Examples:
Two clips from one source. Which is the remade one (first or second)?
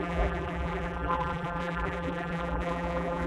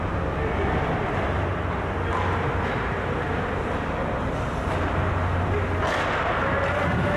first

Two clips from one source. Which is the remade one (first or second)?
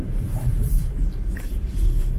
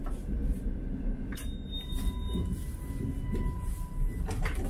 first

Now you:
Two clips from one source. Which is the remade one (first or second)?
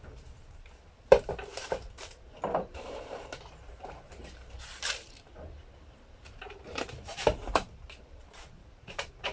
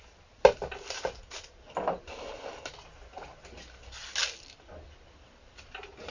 first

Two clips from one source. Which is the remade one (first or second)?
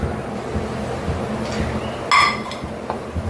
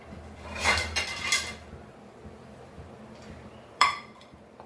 second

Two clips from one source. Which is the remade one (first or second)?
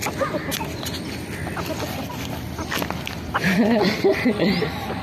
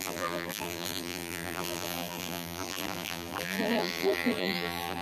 second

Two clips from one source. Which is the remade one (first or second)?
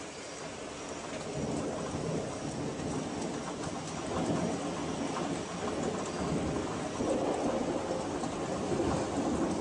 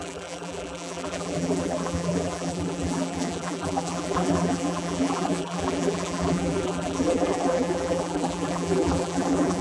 second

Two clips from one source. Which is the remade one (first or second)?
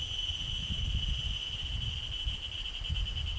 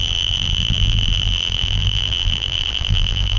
second